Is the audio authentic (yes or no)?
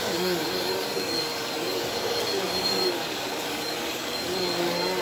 no